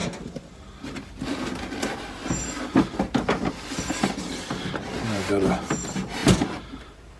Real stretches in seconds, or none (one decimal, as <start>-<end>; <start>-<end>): 0.0-1.8; 2.2-5.3